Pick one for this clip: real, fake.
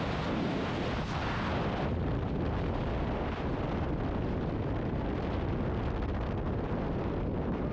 real